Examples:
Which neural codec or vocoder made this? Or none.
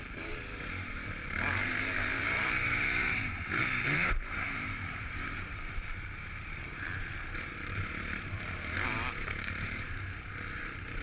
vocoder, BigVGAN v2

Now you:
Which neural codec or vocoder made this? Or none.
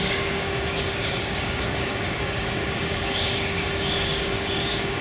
codec, DAC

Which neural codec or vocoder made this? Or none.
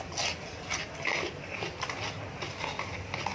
none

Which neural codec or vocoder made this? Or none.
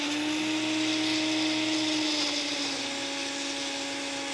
none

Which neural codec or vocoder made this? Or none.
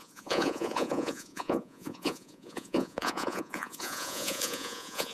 vocoder, Vocos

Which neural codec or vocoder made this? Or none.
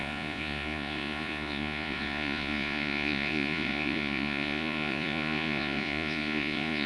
vocoder, Vocos